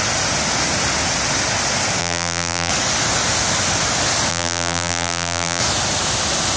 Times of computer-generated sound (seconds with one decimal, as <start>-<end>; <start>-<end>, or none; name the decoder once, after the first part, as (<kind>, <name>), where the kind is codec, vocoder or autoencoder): 2.0-2.7 (vocoder, BigVGAN v2); 4.3-5.6